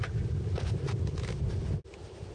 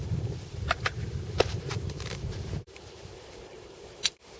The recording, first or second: first